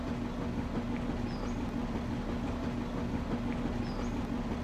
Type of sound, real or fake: real